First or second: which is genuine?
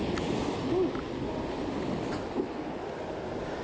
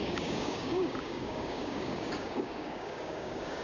first